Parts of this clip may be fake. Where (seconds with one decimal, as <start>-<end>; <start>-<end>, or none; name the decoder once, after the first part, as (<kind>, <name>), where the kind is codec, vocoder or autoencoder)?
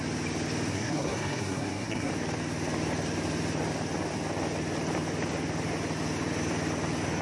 0.7-2.1 (codec, SNAC)